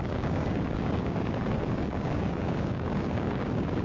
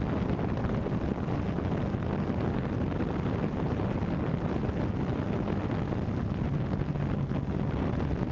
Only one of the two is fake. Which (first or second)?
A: first